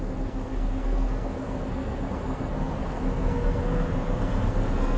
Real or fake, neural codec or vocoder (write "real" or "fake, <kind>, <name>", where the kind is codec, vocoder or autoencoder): fake, codec, SNAC